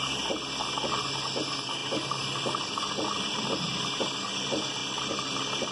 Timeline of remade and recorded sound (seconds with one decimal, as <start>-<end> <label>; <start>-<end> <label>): 0.0-5.7 recorded